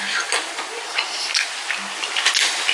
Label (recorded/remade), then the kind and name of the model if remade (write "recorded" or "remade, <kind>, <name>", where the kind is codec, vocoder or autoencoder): recorded